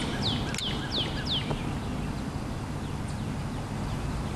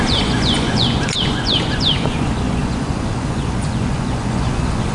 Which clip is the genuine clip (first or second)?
first